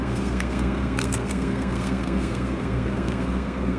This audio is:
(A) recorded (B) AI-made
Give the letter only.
B